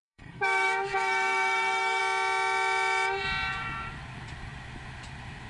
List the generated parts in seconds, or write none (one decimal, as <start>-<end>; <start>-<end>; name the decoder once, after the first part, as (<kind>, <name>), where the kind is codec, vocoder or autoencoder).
0.0-2.0 (codec, SNAC)